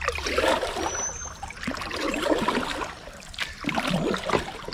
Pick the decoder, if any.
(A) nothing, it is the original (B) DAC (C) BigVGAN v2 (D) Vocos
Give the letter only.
A